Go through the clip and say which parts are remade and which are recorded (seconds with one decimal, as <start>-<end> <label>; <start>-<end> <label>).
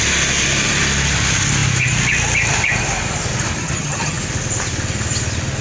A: 0.0-3.6 recorded; 3.6-4.2 remade; 4.2-5.6 recorded